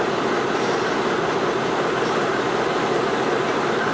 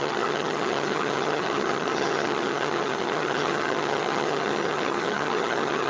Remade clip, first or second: second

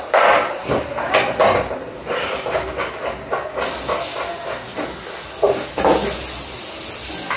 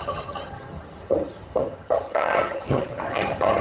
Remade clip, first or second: second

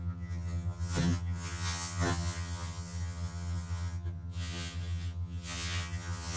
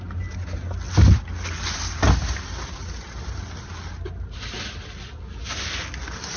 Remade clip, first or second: first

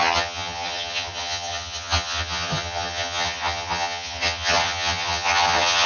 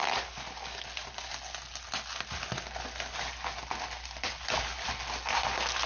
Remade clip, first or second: first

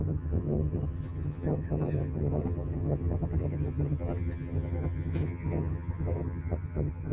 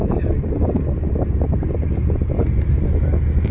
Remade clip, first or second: first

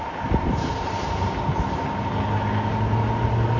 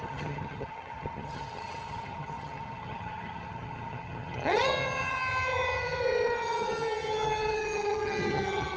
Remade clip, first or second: second